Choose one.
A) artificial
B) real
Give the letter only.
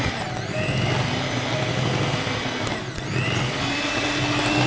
B